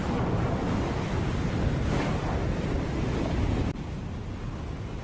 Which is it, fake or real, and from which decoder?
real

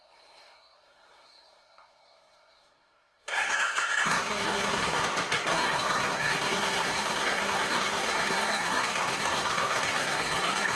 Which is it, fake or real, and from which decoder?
fake, codec, SNAC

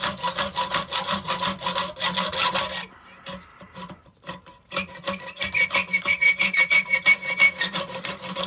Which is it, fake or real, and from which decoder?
real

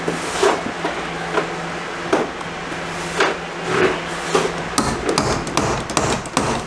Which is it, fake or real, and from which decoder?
real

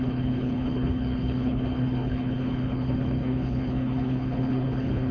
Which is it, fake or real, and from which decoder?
fake, codec, HILCodec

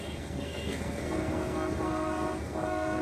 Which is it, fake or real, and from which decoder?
fake, codec, SNAC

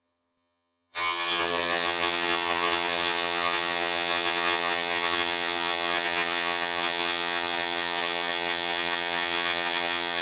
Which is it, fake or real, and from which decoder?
fake, vocoder, HiFi-GAN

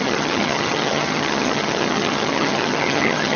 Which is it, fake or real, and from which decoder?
fake, vocoder, HiFi-GAN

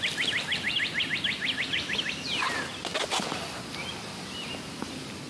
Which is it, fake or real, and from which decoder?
real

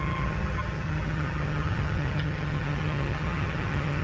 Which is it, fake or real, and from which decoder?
fake, vocoder, HiFi-GAN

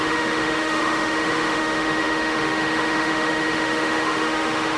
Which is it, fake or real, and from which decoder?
fake, autoencoder, DAC-VAE